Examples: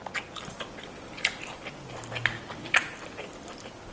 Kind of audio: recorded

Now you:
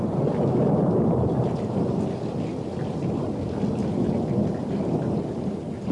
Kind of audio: recorded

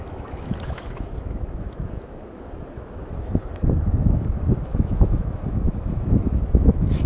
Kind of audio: remade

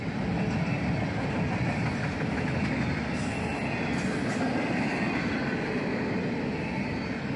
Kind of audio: recorded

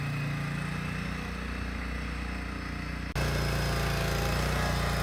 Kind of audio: recorded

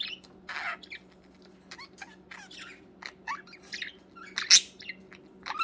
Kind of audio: recorded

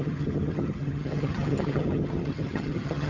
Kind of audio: remade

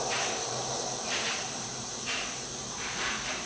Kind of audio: remade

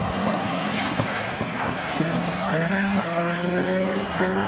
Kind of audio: remade